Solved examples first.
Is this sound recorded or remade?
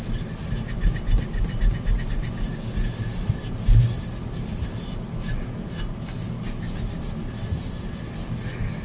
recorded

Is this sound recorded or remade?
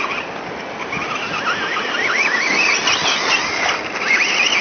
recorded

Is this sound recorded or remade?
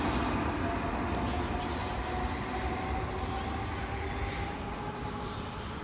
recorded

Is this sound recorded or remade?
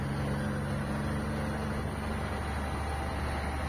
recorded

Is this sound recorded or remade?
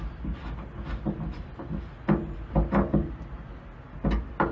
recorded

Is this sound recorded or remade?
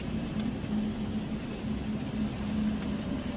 recorded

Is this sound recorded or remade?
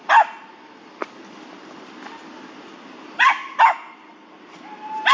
recorded